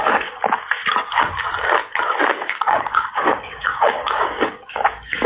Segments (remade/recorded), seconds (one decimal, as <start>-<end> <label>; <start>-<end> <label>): 0.0-0.4 remade; 0.4-2.4 recorded; 2.4-5.3 remade